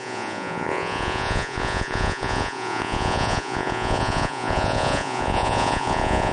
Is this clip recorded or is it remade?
remade